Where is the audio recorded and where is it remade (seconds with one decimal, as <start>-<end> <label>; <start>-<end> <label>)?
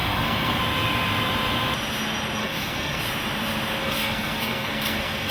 0.0-0.6 remade; 0.6-2.4 recorded; 2.4-3.0 remade; 3.0-3.8 recorded; 3.8-5.3 remade